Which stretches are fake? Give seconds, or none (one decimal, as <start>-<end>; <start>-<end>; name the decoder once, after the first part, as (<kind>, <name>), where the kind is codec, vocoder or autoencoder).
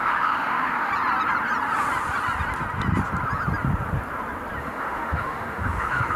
0.0-0.9 (autoencoder, DAC-VAE); 4.6-6.2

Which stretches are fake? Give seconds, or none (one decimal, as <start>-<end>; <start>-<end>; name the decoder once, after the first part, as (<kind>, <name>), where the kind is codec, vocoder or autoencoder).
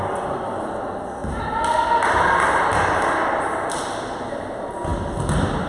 none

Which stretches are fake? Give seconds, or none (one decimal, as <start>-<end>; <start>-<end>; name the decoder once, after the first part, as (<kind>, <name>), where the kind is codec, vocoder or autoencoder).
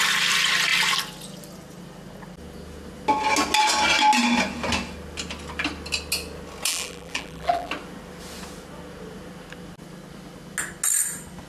6.7-7.7 (vocoder, BigVGAN v2)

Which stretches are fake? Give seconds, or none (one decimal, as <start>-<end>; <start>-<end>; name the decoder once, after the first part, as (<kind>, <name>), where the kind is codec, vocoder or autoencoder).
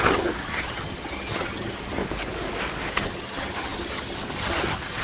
0.0-2.0 (vocoder, HiFi-GAN); 2.9-5.0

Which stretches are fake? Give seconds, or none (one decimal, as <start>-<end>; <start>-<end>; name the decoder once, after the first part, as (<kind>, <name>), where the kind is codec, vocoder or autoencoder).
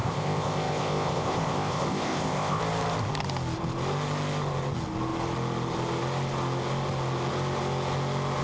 0.0-2.6 (codec, ZipCodec)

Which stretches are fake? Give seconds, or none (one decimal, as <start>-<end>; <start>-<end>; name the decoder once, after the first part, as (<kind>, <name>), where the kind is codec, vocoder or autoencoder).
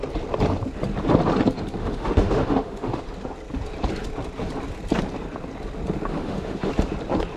1.8-3.0 (autoencoder, DAC-VAE); 6.1-6.7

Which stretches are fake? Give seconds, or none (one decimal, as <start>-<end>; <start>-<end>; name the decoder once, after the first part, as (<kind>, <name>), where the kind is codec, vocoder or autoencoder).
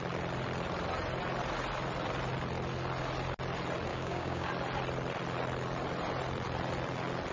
3.9-4.5 (codec, DAC)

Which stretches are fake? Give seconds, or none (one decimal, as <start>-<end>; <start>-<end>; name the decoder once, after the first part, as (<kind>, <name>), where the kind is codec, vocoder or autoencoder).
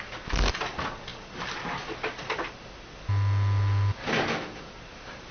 none